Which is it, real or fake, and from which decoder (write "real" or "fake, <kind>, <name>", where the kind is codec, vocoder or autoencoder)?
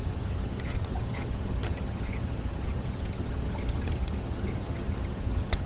fake, vocoder, HiFi-GAN